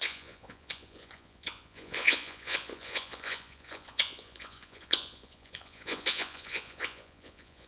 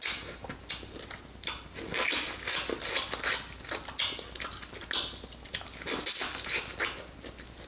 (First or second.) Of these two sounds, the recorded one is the second